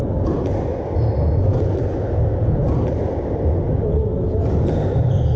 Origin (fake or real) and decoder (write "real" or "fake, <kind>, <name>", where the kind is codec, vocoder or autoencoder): real